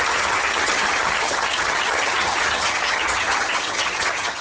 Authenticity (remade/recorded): remade